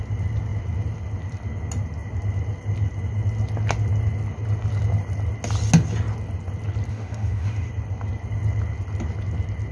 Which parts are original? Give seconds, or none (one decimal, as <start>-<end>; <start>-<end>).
0.0-6.9; 7.7-9.7